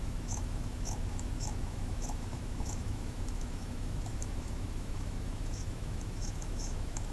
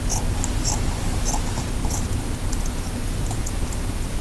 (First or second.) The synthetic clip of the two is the first